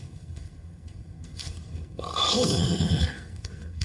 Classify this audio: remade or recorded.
remade